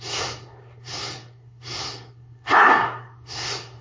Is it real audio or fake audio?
fake